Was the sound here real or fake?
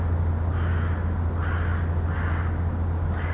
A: real